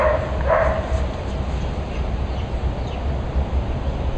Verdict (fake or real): real